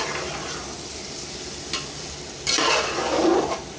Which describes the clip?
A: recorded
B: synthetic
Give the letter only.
A